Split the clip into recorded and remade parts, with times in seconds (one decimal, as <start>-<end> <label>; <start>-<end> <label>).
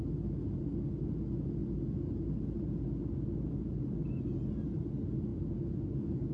0.0-6.3 recorded